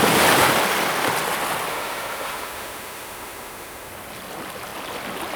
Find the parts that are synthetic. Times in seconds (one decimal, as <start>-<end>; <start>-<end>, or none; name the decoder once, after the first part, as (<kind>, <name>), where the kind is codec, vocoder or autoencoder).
1.7-3.9 (autoencoder, DAC-VAE)